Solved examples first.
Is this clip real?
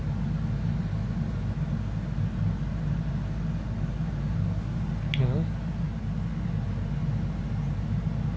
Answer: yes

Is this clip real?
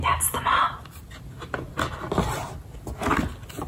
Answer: yes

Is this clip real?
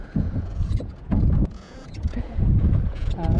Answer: no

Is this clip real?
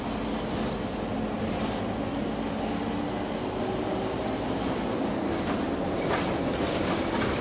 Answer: yes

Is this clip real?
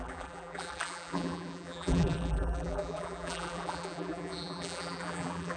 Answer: no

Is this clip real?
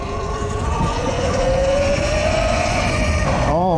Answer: no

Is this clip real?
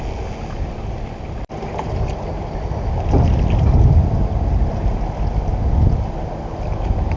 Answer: yes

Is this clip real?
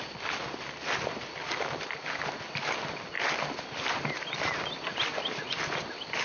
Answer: yes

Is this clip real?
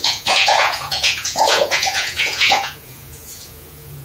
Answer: no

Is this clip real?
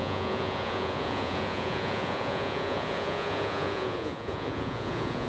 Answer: no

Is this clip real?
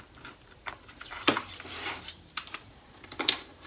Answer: no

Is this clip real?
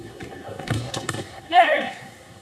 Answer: no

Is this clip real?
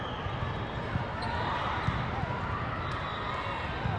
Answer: yes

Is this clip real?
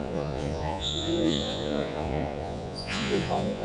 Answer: no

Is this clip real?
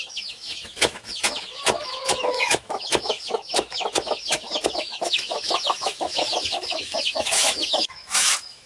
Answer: no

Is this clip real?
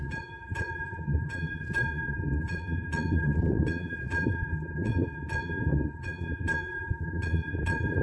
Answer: no